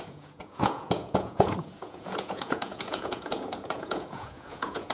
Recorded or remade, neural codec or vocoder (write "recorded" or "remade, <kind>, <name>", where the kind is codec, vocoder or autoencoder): remade, vocoder, Vocos